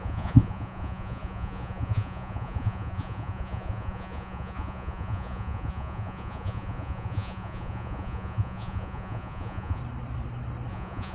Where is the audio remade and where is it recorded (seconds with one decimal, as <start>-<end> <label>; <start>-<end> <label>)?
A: 0.0-9.8 remade; 9.8-10.7 recorded; 10.7-11.1 remade